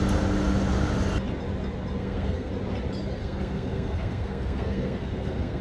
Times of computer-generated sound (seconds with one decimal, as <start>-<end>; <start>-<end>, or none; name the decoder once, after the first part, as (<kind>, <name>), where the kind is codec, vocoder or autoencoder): 2.0-2.5 (codec, SNAC); 3.2-5.6